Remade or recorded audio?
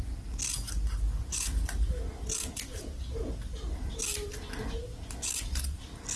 recorded